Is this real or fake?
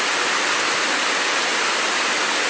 real